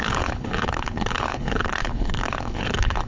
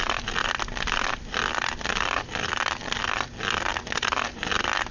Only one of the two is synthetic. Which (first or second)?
first